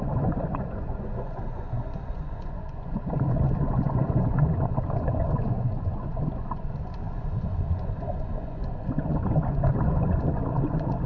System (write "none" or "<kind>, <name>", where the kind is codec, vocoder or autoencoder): vocoder, Vocos